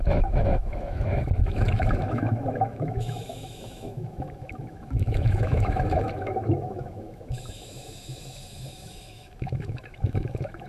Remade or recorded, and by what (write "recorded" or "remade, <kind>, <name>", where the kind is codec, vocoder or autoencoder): remade, autoencoder, DAC-VAE